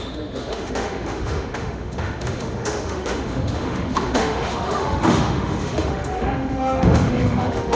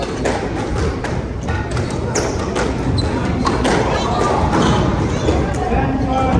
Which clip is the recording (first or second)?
second